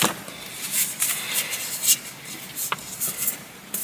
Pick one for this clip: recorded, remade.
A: recorded